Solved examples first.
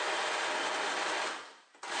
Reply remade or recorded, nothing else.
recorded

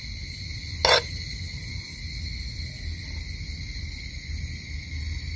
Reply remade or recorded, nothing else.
recorded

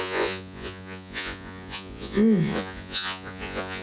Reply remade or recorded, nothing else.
remade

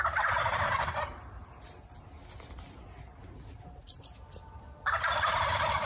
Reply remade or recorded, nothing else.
recorded